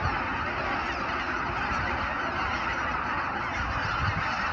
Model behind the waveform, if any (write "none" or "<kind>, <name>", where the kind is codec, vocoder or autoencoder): none